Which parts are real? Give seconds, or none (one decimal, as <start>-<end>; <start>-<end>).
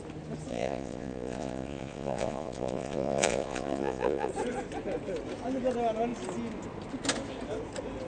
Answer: 0.0-0.5; 4.3-8.1